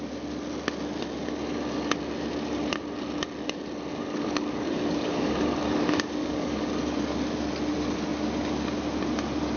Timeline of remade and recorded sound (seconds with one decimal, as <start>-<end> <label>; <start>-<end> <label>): 0.0-3.9 recorded; 3.9-6.7 remade; 6.7-9.6 recorded